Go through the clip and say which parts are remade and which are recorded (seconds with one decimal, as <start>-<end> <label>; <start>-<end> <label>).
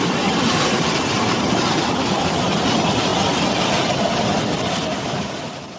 0.0-5.8 recorded